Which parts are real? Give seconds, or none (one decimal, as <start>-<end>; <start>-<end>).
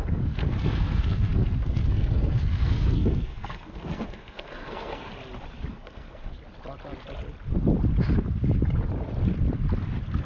5.1-5.7; 6.3-10.2